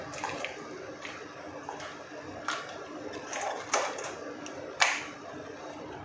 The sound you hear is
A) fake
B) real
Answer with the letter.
B